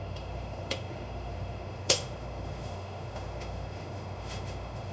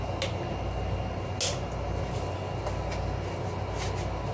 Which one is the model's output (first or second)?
first